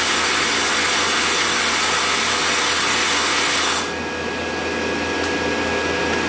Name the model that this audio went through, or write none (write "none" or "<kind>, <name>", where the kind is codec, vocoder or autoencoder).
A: none